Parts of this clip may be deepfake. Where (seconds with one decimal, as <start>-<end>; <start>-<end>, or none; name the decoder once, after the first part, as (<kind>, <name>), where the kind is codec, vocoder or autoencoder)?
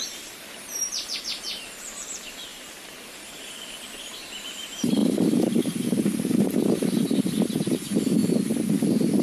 0.0-8.2 (vocoder, BigVGAN v2)